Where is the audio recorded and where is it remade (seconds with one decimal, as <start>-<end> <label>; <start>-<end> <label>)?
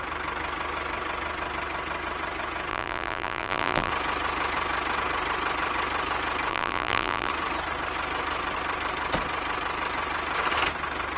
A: 0.0-2.7 recorded; 2.7-3.9 remade; 3.9-6.5 recorded; 6.5-7.3 remade; 7.3-11.2 recorded